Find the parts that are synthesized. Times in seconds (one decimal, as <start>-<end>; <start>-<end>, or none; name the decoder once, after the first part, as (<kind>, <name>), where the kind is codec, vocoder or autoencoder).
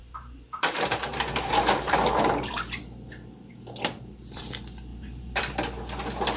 0.0-2.8 (vocoder, BigVGAN v2); 4.9-5.4